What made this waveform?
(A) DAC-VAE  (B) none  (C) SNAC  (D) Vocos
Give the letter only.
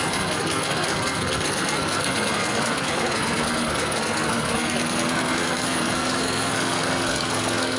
C